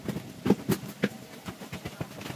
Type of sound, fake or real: real